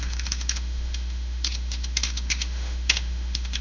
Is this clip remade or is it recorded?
remade